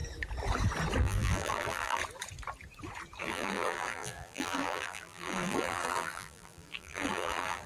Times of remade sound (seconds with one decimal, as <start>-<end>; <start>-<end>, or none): 1.0-2.0; 3.2-7.7